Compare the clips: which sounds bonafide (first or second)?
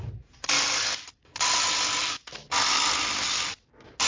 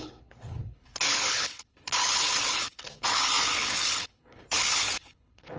first